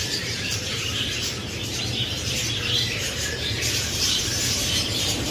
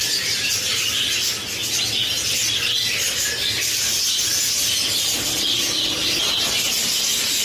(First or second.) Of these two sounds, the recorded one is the second